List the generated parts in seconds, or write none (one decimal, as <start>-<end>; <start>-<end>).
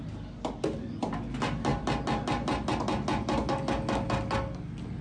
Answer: none